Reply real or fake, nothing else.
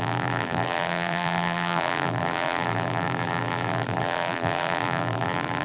fake